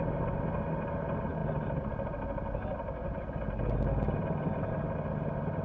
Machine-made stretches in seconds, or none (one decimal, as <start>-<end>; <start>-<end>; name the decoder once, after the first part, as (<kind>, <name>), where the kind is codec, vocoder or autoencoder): none